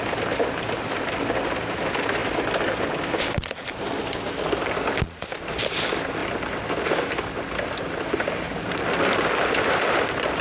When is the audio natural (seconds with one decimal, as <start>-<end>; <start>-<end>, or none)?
none